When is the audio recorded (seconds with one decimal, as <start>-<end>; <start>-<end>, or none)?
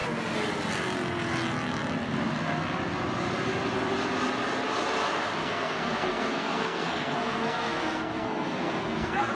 0.0-5.4